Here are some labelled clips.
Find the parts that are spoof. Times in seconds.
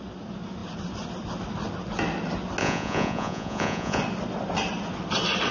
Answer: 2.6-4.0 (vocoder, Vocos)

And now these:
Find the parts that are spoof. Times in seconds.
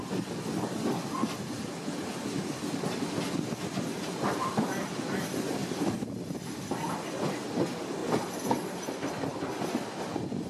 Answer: none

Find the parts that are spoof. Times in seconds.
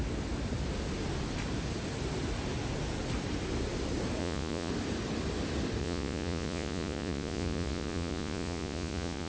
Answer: 4.2-4.7 (vocoder, Vocos); 5.8-9.3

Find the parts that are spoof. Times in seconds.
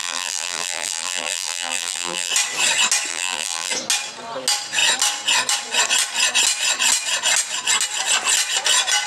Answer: 0.0-2.3 (vocoder, BigVGAN v2); 3.1-3.7